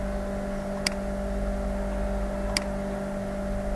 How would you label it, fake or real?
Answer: real